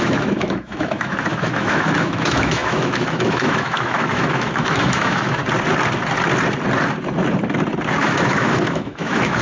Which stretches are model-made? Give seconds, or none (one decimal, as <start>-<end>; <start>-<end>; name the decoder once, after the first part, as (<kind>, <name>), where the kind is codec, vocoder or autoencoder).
0.0-5.4 (autoencoder, DAC-VAE); 8.0-9.4